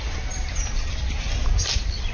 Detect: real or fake real